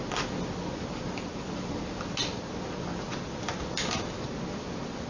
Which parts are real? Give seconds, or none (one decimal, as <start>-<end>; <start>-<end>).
0.0-5.1

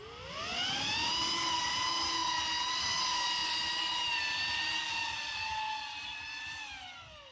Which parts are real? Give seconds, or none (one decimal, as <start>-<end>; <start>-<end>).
0.0-7.3

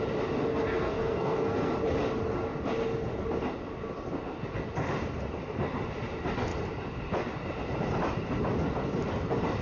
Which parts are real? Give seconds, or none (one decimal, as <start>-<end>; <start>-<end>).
0.0-0.5; 1.7-9.6

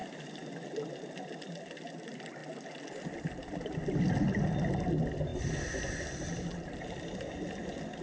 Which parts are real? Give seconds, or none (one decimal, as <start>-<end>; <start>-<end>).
0.0-8.0

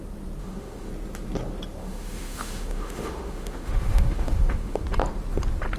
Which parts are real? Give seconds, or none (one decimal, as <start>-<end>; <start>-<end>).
0.0-0.4; 0.9-1.8; 4.8-5.8

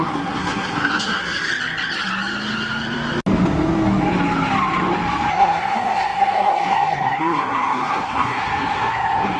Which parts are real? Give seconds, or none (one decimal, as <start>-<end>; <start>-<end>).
1.5-5.3

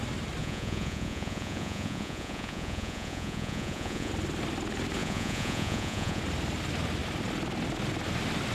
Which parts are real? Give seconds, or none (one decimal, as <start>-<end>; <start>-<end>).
0.0-0.4; 4.1-5.0; 6.2-8.5

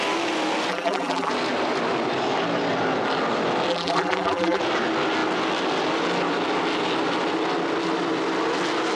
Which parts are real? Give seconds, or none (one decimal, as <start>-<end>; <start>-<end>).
0.0-0.7; 1.3-3.7; 4.6-8.9